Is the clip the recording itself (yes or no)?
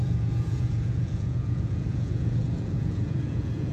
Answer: no